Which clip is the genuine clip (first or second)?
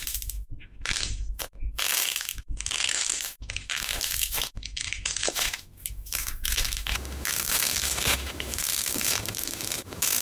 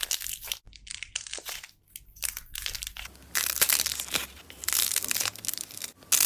second